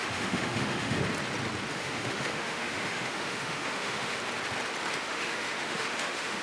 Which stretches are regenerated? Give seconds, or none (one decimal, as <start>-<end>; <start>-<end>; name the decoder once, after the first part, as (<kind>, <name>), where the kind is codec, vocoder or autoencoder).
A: 0.0-1.0 (autoencoder, DAC-VAE); 1.7-4.2; 4.9-6.4